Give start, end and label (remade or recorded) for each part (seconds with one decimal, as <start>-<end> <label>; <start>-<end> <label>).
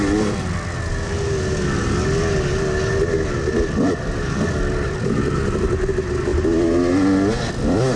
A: 0.0-8.0 recorded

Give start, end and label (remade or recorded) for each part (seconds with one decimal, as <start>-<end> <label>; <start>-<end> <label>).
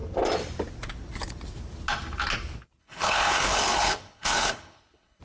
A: 0.0-2.8 recorded; 2.8-5.2 remade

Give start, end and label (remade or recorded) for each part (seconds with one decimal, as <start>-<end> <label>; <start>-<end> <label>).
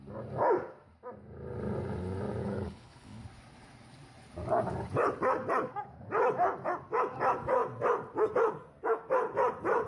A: 0.0-2.4 recorded; 2.4-3.2 remade; 3.2-9.9 recorded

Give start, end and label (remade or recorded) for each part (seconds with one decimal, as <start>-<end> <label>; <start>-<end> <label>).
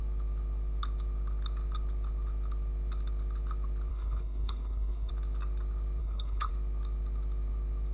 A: 0.0-3.9 recorded; 3.9-5.1 remade; 5.1-6.0 recorded; 6.0-6.5 remade; 6.5-7.9 recorded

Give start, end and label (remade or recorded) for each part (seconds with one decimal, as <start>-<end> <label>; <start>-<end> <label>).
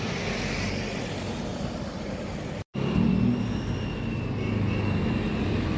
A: 0.0-5.8 recorded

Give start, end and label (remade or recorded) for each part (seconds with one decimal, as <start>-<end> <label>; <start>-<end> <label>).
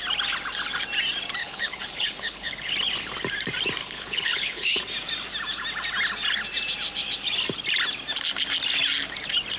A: 0.0-1.4 recorded; 1.4-2.7 remade; 2.7-3.8 recorded; 3.8-4.8 remade; 4.8-9.6 recorded